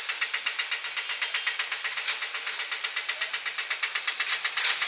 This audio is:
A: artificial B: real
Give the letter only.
B